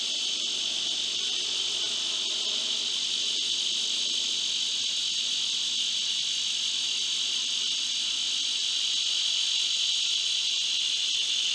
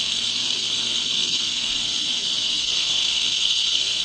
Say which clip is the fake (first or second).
second